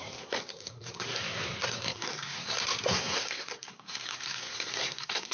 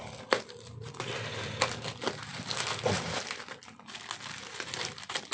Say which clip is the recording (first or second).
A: second